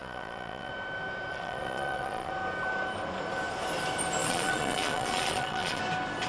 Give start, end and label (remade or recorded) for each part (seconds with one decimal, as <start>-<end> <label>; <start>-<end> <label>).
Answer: 0.0-0.7 remade; 0.7-1.3 recorded; 1.3-2.3 remade; 2.3-4.2 recorded; 4.2-5.8 remade; 5.8-6.3 recorded